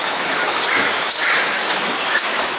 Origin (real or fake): fake